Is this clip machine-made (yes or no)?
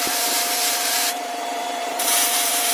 yes